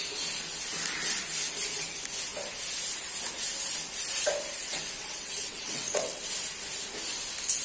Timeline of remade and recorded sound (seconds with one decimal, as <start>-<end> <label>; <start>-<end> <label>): 0.0-4.6 recorded; 4.6-6.2 remade; 6.2-7.6 recorded